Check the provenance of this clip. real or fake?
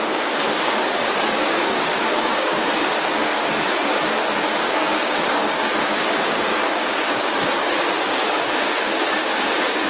fake